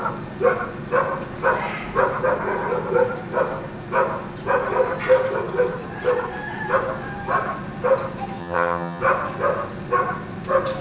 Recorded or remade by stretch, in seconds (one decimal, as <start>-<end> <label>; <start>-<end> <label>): 0.0-8.4 recorded; 8.4-9.0 remade; 9.0-10.8 recorded